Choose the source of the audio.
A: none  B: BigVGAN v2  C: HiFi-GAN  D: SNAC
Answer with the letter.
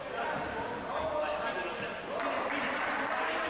A